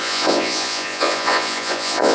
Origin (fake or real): fake